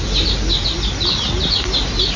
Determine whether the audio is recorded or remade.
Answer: recorded